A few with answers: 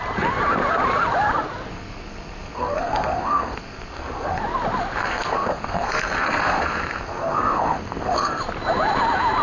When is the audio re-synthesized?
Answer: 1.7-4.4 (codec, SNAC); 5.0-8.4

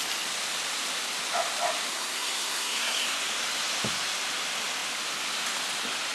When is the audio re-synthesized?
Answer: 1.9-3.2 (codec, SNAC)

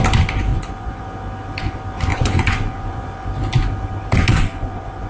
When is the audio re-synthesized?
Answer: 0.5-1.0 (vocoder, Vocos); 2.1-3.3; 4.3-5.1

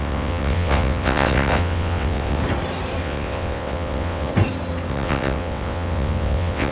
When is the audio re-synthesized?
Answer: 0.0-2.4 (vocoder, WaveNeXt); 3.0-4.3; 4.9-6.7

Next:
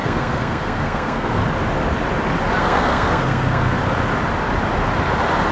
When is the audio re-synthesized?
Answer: 0.0-1.4 (codec, SNAC); 2.6-3.8